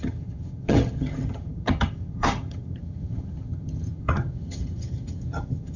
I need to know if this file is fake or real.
fake